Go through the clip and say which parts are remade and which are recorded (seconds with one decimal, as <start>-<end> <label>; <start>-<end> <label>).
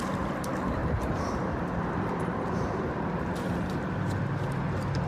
0.0-0.8 recorded; 0.8-3.9 remade; 3.9-5.1 recorded